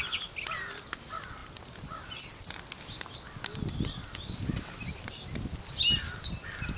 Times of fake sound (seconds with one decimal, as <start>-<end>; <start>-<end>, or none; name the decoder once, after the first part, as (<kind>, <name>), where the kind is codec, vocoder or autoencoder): none